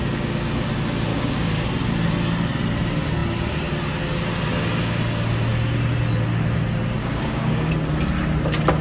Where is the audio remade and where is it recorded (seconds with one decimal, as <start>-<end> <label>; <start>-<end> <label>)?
0.0-1.1 recorded; 1.1-1.6 remade; 1.6-7.0 recorded; 7.0-7.7 remade; 7.7-8.8 recorded